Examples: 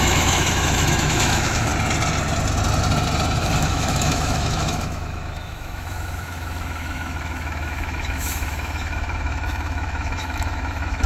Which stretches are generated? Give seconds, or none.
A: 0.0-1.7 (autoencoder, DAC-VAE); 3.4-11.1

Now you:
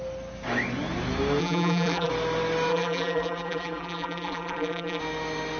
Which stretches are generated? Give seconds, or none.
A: 1.4-2.1 (vocoder, BigVGAN v2); 2.7-5.0

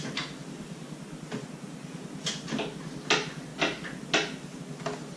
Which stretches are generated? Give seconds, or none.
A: none

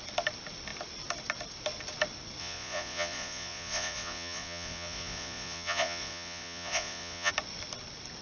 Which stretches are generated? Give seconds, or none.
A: 2.4-7.3 (vocoder, Vocos)